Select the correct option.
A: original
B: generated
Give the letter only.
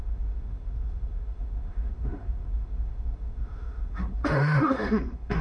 B